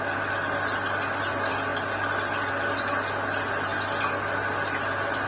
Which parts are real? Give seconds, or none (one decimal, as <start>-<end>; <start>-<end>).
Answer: 0.0-5.3